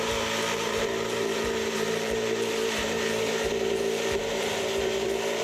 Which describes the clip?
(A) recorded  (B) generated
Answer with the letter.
B